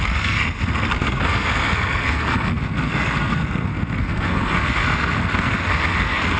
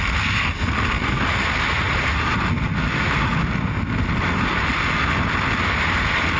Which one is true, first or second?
second